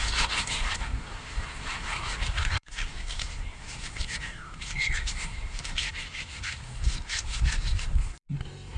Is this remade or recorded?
remade